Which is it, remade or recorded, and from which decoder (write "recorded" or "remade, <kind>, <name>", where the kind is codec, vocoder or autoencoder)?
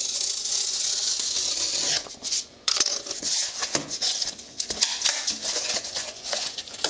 remade, vocoder, Vocos